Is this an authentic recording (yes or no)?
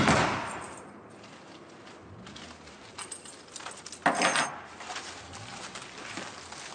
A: yes